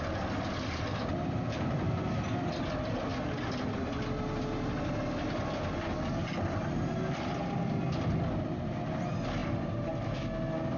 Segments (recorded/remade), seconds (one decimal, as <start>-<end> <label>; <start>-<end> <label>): 0.0-10.8 recorded